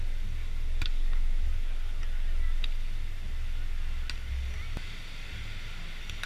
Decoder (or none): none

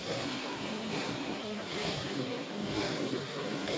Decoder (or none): codec, SNAC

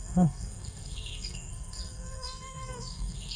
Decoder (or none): codec, SNAC